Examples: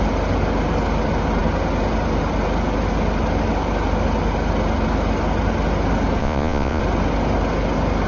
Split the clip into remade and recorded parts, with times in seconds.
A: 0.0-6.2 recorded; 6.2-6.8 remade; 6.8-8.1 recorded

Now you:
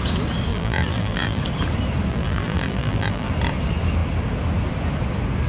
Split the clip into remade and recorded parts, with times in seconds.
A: 0.0-0.5 recorded; 0.5-1.4 remade; 1.4-2.1 recorded; 2.1-3.3 remade; 3.3-5.5 recorded

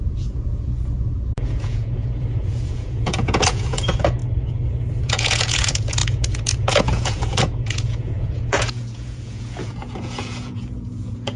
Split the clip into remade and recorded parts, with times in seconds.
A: 0.0-4.2 remade; 4.2-5.0 recorded; 5.0-11.4 remade

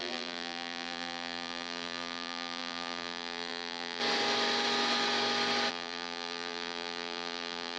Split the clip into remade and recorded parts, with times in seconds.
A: 0.0-4.0 remade; 4.0-5.7 recorded; 5.7-7.8 remade

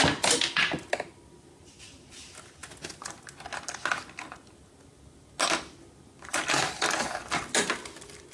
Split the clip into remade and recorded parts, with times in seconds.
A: 0.0-6.3 recorded; 6.3-7.2 remade; 7.2-8.3 recorded

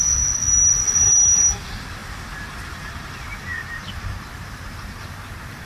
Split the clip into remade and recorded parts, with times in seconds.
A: 0.0-2.0 recorded; 2.0-3.1 remade; 3.1-3.5 recorded; 3.5-4.7 remade; 4.7-5.7 recorded